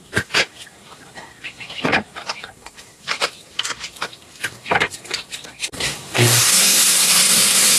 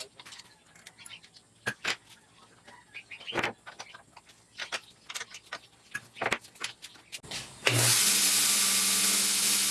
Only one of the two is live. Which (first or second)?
second